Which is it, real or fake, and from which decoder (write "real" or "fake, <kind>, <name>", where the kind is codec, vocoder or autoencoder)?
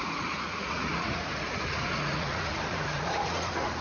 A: fake, vocoder, Vocos